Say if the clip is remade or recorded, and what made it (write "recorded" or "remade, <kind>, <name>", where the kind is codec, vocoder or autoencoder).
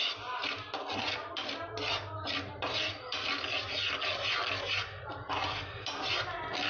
recorded